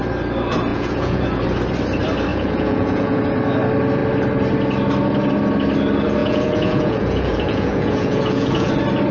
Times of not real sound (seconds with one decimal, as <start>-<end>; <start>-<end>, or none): 0.7-1.4; 2.3-3.2; 6.2-8.7